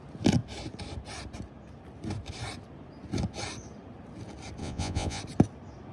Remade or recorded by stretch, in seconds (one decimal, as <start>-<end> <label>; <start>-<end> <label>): 0.0-4.6 recorded; 4.6-5.2 remade; 5.2-5.9 recorded